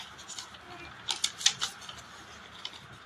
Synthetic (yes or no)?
no